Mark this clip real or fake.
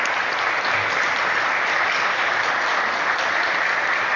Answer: real